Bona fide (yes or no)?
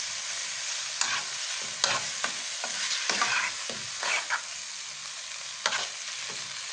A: yes